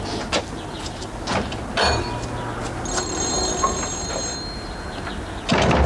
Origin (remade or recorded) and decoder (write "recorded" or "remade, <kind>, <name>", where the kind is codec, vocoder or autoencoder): recorded